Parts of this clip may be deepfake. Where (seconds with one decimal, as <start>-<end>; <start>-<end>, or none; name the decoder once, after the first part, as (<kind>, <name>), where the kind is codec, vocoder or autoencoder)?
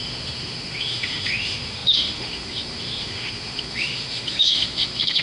0.0-5.2 (autoencoder, DAC-VAE)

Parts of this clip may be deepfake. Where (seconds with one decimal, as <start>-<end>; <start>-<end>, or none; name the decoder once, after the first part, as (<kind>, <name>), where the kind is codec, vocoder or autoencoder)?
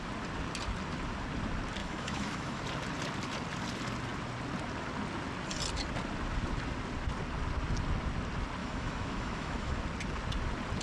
1.8-2.6 (autoencoder, DAC-VAE); 8.6-9.8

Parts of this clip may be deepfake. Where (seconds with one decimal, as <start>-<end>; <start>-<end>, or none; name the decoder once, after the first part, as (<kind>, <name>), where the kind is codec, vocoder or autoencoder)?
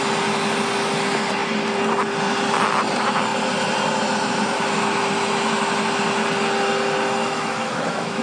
7.2-8.2 (autoencoder, DAC-VAE)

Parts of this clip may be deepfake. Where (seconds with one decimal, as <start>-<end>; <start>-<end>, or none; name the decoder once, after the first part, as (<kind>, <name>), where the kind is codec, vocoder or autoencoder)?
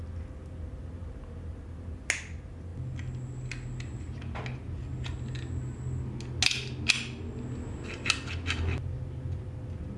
none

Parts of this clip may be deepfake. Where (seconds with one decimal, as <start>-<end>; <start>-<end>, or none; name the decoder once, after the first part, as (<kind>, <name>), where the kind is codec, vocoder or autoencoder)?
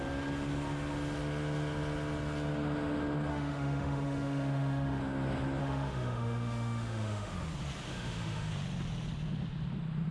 3.3-5.0 (autoencoder, DAC-VAE); 5.6-7.3; 7.9-8.5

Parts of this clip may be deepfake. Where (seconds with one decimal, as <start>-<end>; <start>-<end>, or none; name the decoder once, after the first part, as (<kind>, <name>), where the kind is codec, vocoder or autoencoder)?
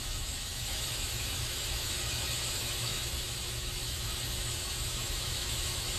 0.0-6.0 (autoencoder, DAC-VAE)